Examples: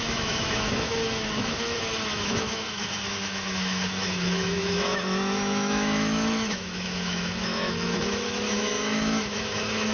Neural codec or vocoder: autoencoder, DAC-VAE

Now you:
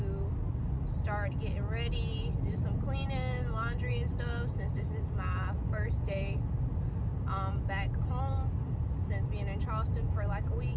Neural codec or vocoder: none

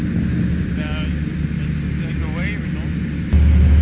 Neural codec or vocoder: none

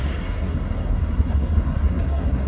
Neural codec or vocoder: codec, SNAC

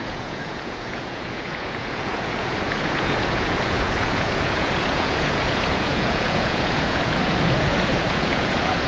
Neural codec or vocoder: vocoder, Vocos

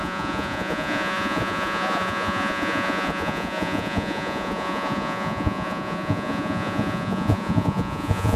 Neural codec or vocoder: vocoder, Vocos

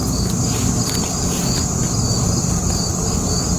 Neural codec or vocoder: none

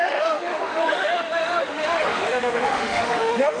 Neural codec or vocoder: autoencoder, DAC-VAE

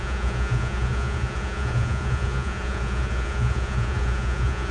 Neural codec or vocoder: vocoder, Vocos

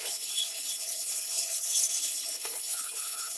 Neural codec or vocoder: codec, HILCodec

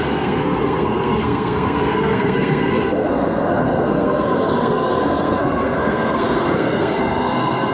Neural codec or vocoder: codec, SNAC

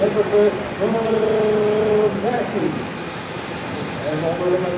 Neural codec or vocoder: none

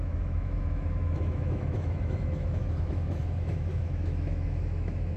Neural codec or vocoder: autoencoder, DAC-VAE